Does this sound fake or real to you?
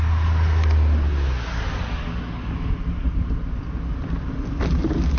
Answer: real